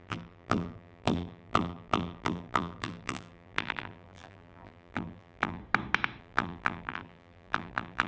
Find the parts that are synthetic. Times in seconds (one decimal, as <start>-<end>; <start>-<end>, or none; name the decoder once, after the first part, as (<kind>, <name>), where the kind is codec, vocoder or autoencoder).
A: 0.0-5.6 (vocoder, BigVGAN v2); 6.2-8.1